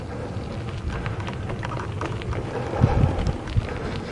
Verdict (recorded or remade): recorded